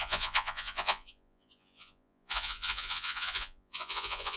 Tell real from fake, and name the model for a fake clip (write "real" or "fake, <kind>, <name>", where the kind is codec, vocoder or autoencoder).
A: fake, vocoder, Vocos